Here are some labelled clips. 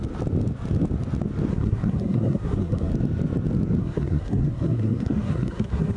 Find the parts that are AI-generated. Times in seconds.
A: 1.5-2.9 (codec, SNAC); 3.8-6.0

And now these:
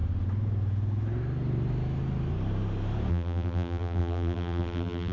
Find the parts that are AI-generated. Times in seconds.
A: 3.1-5.1 (vocoder, BigVGAN v2)

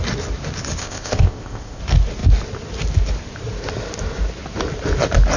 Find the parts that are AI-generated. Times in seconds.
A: 0.8-1.8 (codec, ZipCodec)